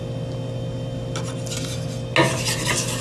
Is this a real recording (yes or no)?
yes